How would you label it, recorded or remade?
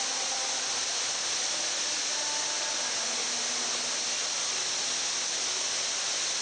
recorded